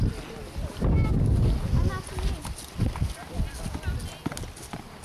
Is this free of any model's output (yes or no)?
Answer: yes